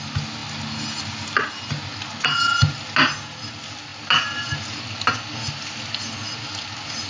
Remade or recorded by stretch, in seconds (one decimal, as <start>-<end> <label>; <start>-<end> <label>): 0.0-7.1 recorded

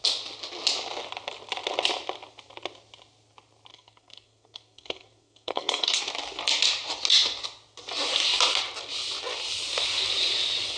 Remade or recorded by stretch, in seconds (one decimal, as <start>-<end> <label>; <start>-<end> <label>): 0.0-3.7 recorded; 3.7-6.0 remade; 6.0-10.8 recorded

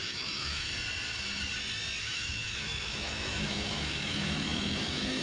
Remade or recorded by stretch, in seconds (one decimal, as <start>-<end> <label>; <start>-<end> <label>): 0.0-0.7 remade; 0.7-2.0 recorded; 2.0-5.2 remade

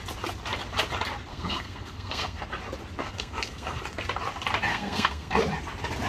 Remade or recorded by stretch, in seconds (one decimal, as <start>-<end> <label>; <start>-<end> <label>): 0.0-1.3 recorded; 1.3-2.4 remade; 2.4-3.0 recorded; 3.0-3.8 remade; 3.8-4.7 recorded; 4.7-5.4 remade; 5.4-6.1 recorded

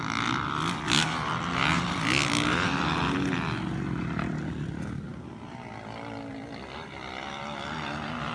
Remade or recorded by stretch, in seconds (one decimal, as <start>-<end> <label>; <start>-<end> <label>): 0.0-8.3 recorded